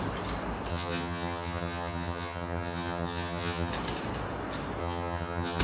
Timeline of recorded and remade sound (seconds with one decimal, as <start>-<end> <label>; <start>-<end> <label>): 0.0-0.7 recorded; 0.7-3.7 remade; 3.7-4.8 recorded; 4.8-5.6 remade